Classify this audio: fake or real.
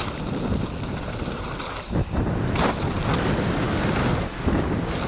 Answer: real